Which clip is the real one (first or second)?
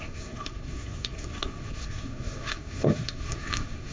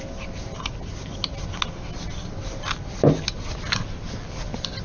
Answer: second